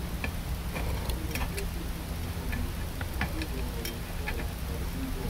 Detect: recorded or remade recorded